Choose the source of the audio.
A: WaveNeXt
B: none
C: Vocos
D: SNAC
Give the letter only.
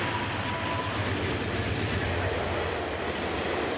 B